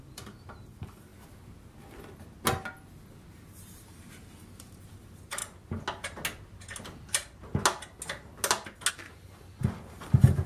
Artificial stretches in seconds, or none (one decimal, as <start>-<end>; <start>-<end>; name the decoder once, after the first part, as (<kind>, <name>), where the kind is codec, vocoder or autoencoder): 0.0-1.1 (vocoder, BigVGAN v2); 3.3-5.4; 8.9-10.5